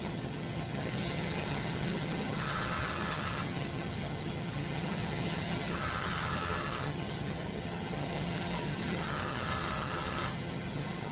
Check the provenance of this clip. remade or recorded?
remade